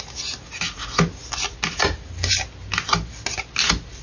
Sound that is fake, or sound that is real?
real